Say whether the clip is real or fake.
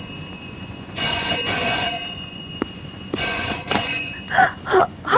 fake